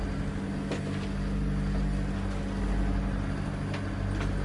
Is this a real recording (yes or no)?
yes